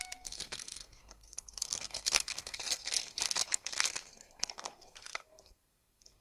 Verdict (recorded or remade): remade